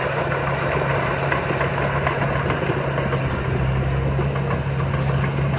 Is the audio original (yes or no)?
yes